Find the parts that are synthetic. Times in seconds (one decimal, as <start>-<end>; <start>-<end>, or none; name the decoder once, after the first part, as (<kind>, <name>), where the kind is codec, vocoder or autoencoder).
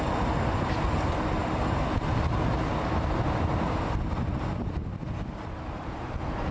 none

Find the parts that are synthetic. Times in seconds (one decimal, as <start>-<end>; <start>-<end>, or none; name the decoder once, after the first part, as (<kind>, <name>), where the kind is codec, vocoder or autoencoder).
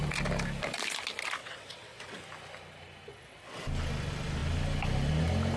1.4-2.2 (vocoder, WaveNeXt); 3.1-3.6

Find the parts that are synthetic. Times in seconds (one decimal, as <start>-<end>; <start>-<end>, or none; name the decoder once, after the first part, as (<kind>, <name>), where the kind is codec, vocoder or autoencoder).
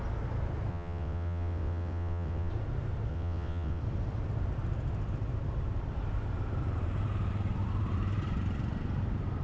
0.7-2.5 (vocoder, WaveNeXt); 3.1-3.8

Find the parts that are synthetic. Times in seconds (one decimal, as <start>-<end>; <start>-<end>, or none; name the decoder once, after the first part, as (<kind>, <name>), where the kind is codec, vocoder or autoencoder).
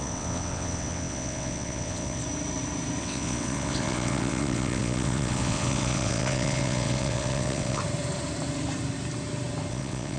0.0-2.2 (vocoder, WaveNeXt); 3.0-7.8; 9.7-10.2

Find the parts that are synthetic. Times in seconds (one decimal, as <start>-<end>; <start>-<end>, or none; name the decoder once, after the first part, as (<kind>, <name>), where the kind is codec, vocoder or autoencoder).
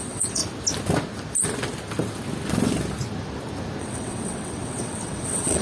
0.0-0.4 (vocoder, WaveNeXt); 3.8-5.6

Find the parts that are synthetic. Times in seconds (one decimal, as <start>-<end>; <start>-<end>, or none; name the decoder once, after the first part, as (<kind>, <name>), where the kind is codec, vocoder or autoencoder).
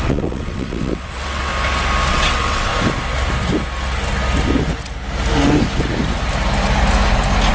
0.0-1.5 (vocoder, WaveNeXt); 2.1-2.7